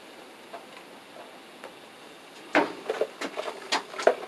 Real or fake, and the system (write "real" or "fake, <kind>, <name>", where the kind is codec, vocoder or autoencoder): real